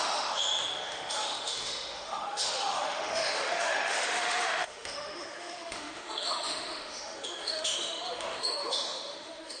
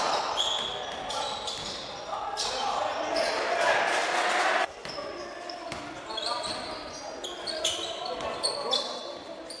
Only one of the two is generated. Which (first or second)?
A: first